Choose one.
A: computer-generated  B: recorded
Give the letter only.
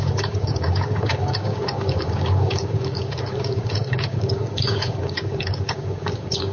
A